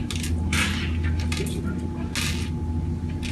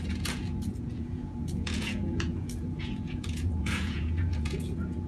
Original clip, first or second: first